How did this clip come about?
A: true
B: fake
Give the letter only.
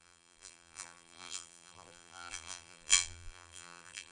B